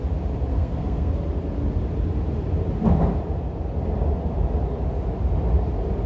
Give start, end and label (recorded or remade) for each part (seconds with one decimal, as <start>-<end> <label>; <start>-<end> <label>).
0.0-0.5 recorded; 0.5-1.1 remade; 1.1-6.1 recorded